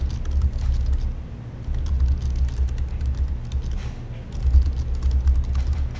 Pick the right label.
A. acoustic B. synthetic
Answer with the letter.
A